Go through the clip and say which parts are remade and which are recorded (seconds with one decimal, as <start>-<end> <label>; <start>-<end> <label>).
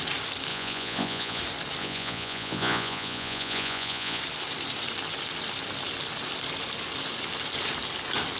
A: 0.0-0.5 recorded; 0.5-1.4 remade; 1.4-1.8 recorded; 1.8-4.2 remade; 4.2-8.4 recorded